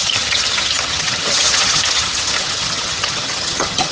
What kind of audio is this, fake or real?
fake